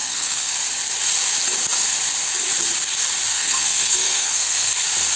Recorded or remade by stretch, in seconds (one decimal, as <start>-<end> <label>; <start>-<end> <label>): 0.0-0.5 remade; 0.5-3.3 recorded; 3.3-4.7 remade; 4.7-5.2 recorded